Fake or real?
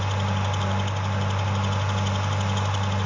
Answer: real